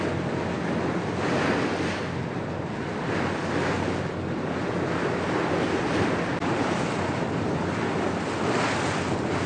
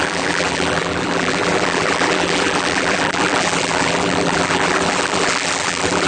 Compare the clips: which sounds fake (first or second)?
second